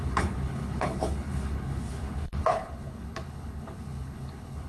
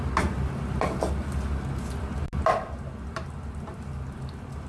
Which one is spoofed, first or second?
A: first